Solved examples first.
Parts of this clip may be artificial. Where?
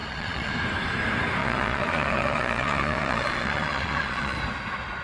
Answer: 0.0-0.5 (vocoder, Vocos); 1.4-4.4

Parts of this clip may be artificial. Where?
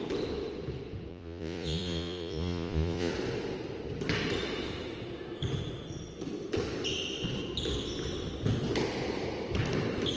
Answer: 1.1-3.1 (vocoder, Vocos)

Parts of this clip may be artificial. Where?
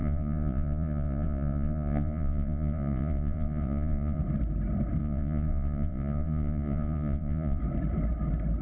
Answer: 0.0-4.2 (vocoder, Vocos); 5.0-7.6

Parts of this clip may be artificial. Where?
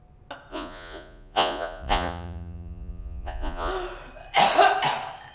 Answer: 0.5-3.7 (vocoder, Vocos)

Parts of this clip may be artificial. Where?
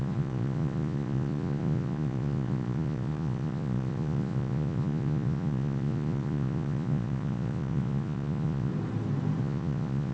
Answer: 0.0-8.7 (vocoder, Vocos); 9.4-10.1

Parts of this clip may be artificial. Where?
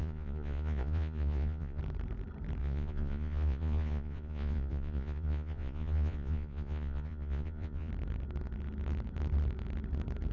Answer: 0.0-1.8 (vocoder, Vocos); 2.6-7.9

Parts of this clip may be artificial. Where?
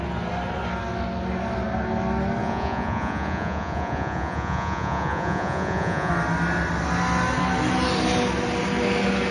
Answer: 2.4-6.1 (vocoder, Vocos)